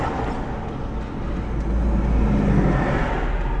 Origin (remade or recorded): recorded